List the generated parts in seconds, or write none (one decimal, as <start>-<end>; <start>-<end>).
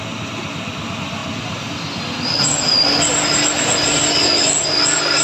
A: none